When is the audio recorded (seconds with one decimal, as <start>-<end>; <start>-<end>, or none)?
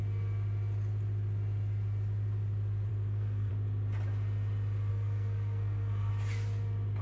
0.0-2.9; 3.5-4.9; 6.1-7.0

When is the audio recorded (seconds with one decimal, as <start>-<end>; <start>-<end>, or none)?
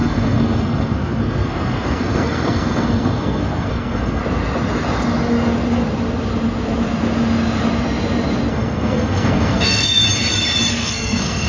4.2-8.5; 10.0-10.7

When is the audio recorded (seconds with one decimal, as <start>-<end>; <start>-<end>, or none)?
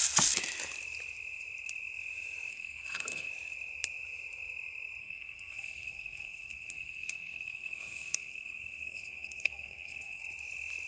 0.0-2.5; 3.3-5.0; 10.2-10.9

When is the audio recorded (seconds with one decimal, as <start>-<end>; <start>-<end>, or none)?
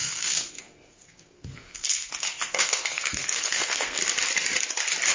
4.0-5.1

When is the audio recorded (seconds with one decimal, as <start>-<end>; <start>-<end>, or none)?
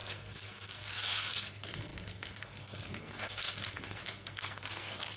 none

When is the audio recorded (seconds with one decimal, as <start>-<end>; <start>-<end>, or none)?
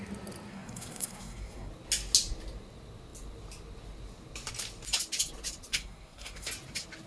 0.0-0.5; 1.7-5.7; 6.5-7.1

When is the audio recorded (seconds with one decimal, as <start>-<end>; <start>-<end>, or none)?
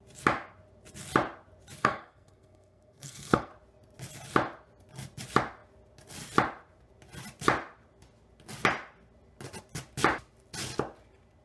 0.0-1.8; 3.5-11.4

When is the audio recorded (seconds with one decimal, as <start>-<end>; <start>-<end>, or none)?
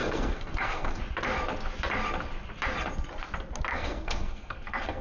1.0-3.7